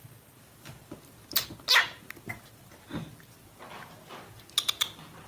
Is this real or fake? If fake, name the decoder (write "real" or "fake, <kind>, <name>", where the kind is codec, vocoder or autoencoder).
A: real